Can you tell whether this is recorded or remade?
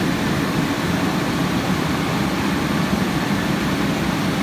remade